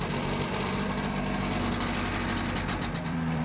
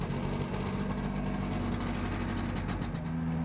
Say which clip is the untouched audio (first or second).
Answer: second